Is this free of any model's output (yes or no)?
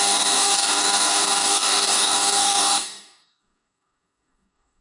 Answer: no